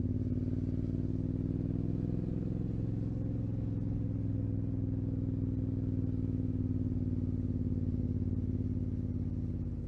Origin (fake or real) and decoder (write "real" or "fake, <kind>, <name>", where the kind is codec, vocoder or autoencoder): real